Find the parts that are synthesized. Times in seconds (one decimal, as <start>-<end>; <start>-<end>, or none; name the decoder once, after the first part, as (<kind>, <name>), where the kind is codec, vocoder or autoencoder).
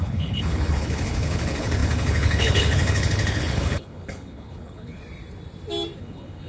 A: 0.0-5.0 (codec, HILCodec); 6.0-6.5